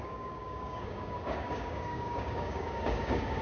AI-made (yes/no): yes